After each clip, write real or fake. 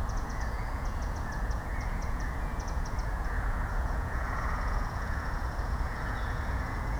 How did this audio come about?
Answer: fake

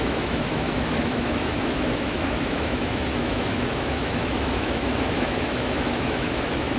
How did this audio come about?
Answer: fake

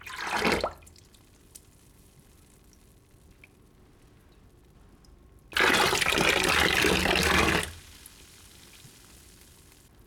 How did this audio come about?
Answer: real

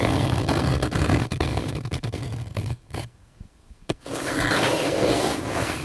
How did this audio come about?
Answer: fake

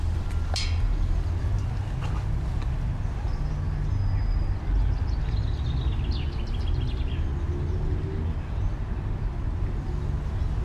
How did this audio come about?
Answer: real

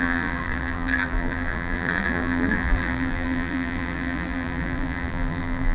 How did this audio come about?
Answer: fake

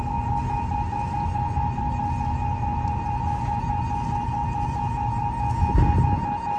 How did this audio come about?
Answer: real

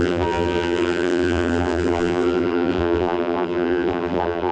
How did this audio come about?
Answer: fake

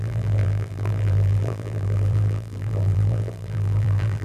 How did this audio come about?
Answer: fake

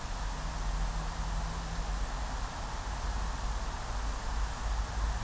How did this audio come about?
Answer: real